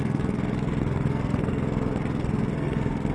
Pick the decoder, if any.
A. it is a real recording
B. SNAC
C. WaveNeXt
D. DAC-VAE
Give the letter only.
B